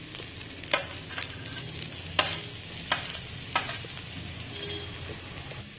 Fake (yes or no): no